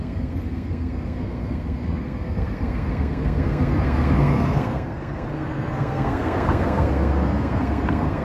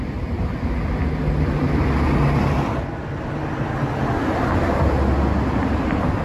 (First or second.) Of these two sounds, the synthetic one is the first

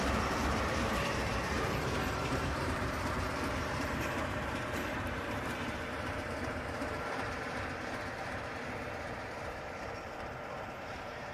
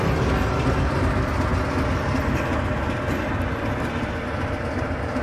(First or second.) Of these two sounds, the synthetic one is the first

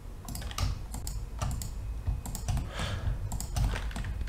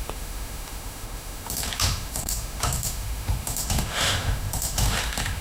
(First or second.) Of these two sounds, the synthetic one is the second